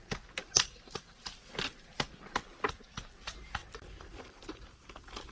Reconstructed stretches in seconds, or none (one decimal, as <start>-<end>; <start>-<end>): 0.4-1.1; 3.6-5.3